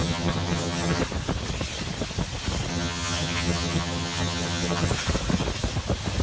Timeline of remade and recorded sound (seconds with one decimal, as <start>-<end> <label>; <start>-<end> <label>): 0.0-1.0 remade; 1.0-2.7 recorded; 2.7-4.9 remade; 4.9-6.2 recorded